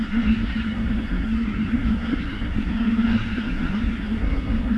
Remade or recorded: remade